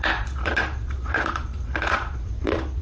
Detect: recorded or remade remade